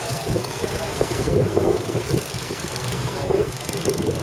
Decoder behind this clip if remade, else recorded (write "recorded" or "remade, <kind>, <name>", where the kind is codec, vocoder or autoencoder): remade, codec, SNAC